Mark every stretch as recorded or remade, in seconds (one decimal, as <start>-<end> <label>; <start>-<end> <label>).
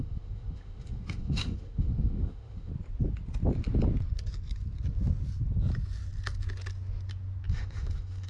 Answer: 0.0-2.7 remade; 2.7-7.5 recorded; 7.5-8.3 remade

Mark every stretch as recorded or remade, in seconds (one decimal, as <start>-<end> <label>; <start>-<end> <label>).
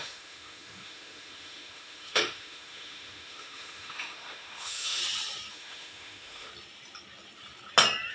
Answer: 0.0-5.0 remade; 5.0-5.5 recorded; 5.5-6.5 remade; 6.5-8.1 recorded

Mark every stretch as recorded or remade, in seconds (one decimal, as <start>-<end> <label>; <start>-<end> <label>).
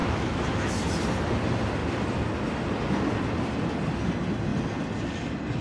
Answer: 0.0-0.7 remade; 0.7-5.6 recorded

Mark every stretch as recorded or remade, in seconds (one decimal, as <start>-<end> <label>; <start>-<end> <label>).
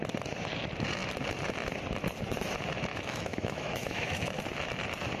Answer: 0.0-2.9 recorded; 2.9-4.4 remade; 4.4-5.2 recorded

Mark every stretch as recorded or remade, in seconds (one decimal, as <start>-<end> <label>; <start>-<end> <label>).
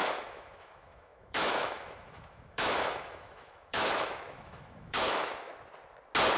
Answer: 0.0-5.5 remade; 5.5-6.4 recorded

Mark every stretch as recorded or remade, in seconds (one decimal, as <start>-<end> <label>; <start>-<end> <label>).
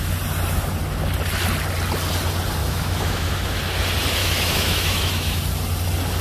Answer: 0.0-2.6 recorded; 2.6-3.6 remade; 3.6-4.2 recorded; 4.2-5.4 remade; 5.4-6.2 recorded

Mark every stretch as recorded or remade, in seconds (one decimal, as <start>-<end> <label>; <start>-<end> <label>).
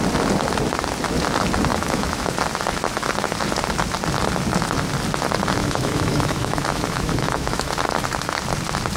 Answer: 0.0-1.7 recorded; 1.7-2.3 remade; 2.3-5.6 recorded; 5.6-7.7 remade; 7.7-9.0 recorded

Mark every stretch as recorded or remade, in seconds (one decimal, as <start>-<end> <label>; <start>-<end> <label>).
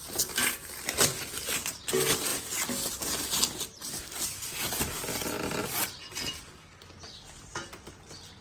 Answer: 0.0-8.4 recorded